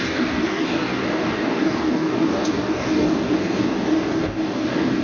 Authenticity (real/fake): fake